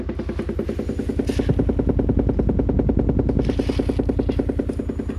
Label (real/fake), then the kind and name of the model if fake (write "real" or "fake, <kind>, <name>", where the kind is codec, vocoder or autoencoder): real